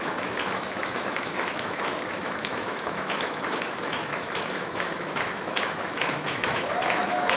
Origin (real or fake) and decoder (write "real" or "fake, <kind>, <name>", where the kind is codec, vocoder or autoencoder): fake, autoencoder, DAC-VAE